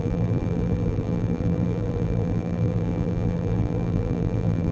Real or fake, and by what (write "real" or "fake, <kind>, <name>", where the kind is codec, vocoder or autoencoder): fake, vocoder, BigVGAN v2